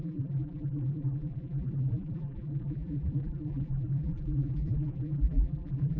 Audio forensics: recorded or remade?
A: remade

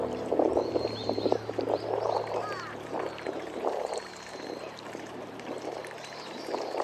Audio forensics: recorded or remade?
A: remade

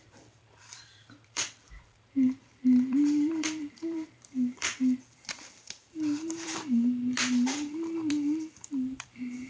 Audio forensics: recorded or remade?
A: remade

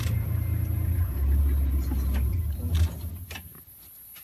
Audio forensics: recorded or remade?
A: recorded